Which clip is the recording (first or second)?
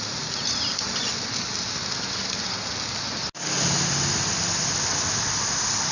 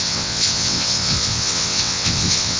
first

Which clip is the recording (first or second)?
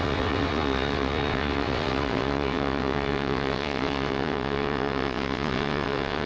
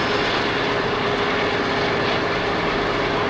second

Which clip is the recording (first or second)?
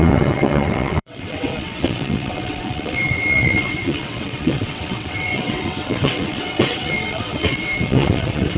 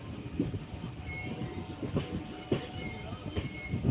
second